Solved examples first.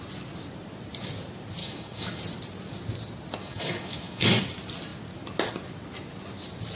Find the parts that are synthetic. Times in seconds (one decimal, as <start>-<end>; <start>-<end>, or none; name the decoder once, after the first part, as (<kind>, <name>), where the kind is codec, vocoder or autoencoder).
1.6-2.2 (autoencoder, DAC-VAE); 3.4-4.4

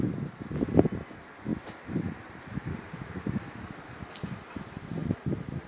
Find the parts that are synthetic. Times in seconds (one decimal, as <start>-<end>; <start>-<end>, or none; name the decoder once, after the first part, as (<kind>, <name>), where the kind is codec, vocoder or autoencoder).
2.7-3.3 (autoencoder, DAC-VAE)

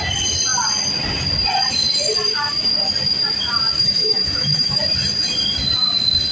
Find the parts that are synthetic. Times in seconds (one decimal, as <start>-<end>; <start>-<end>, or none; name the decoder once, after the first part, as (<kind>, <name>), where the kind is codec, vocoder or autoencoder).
3.8-4.8 (autoencoder, DAC-VAE)

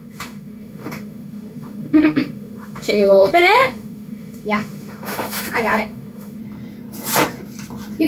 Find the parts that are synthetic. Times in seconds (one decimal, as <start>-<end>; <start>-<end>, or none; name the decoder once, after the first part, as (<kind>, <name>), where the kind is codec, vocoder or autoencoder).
0.0-6.4 (autoencoder, DAC-VAE)